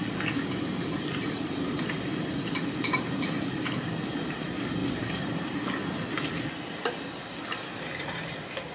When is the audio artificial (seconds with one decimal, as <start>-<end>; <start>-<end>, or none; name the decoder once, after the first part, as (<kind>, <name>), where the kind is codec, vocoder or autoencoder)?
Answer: 4.8-5.6 (vocoder, BigVGAN v2)